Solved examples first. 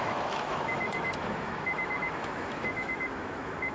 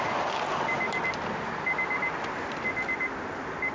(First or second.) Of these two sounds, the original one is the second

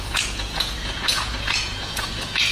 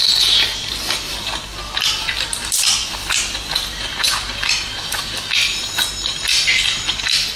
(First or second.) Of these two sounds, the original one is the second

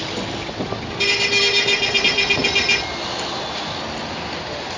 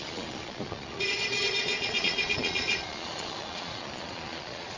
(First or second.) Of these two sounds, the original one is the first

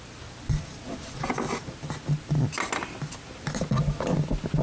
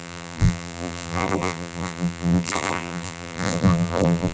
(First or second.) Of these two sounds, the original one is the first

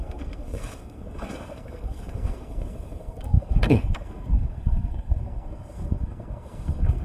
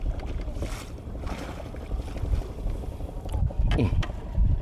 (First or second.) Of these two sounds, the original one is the second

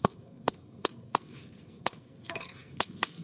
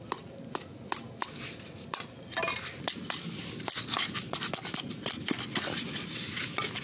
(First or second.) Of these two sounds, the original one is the second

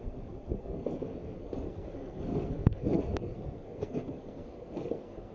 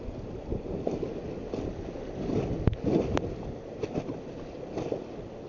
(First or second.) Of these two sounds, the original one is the second